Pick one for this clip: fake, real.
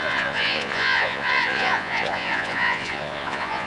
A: fake